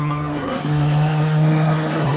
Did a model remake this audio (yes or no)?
yes